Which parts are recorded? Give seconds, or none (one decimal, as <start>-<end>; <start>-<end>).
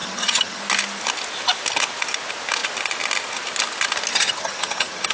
0.6-4.1